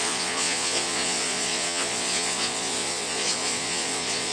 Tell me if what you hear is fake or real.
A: fake